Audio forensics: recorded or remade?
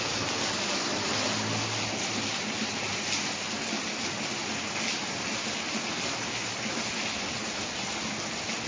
recorded